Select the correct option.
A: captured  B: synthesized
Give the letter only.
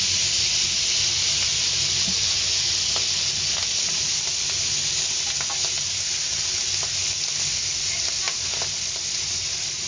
A